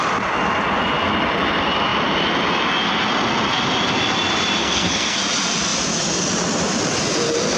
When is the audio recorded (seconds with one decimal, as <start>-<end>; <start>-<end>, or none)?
0.0-4.6; 5.2-7.6